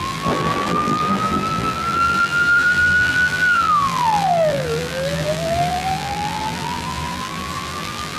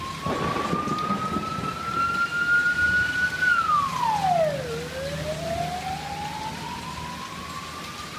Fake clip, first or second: first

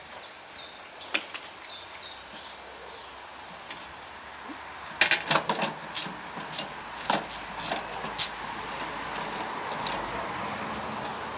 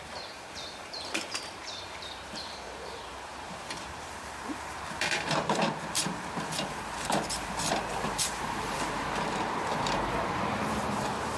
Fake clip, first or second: second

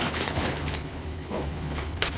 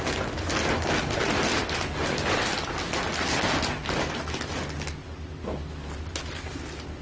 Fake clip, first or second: first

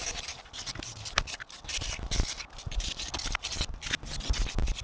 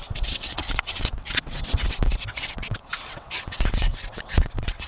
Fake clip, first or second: second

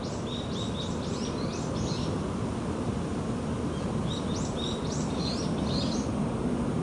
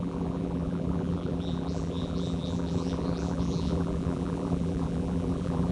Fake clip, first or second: second